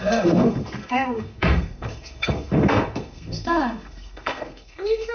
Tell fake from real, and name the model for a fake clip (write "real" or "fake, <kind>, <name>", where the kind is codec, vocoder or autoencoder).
fake, codec, SNAC